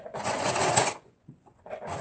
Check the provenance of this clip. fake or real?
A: fake